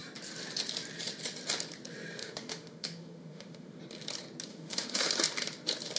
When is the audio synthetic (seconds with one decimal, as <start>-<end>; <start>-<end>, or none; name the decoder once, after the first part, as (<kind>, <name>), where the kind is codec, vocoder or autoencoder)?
2.2-3.8 (autoencoder, DAC-VAE); 4.5-5.1